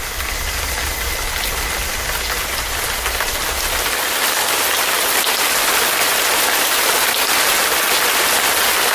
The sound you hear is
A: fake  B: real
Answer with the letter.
B